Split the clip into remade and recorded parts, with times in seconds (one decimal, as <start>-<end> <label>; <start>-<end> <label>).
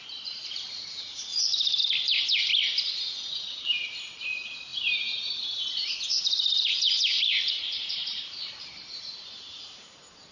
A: 0.0-2.5 remade; 2.5-3.4 recorded; 3.4-10.3 remade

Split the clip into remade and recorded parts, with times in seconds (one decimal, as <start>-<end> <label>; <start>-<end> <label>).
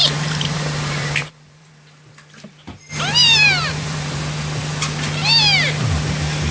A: 0.0-1.7 remade; 1.7-3.2 recorded; 3.2-4.2 remade; 4.2-6.5 recorded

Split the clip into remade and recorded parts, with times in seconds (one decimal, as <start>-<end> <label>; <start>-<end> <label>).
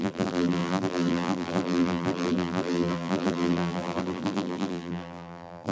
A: 0.0-5.7 remade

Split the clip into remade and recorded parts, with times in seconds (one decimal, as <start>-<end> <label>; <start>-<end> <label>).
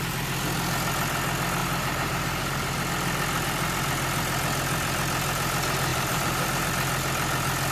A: 0.0-1.6 recorded; 1.6-2.4 remade; 2.4-5.9 recorded; 5.9-6.7 remade; 6.7-7.7 recorded